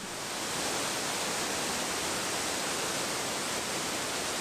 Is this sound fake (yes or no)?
no